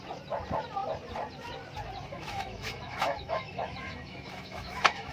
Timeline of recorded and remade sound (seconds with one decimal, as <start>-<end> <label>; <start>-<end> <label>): 0.0-2.1 recorded; 2.1-5.1 remade